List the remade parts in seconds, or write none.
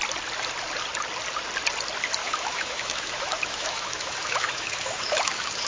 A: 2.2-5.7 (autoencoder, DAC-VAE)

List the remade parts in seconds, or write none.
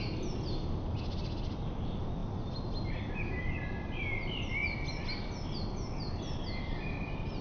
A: none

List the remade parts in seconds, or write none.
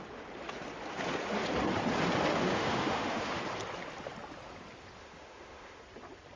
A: 2.3-3.4 (autoencoder, DAC-VAE); 5.0-5.8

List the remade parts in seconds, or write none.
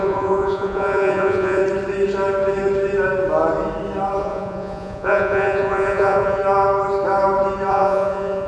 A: 0.0-1.6 (vocoder, Vocos); 4.2-6.4; 7.7-8.5